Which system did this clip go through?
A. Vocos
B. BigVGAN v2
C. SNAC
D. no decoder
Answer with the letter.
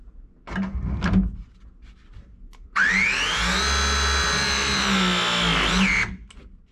D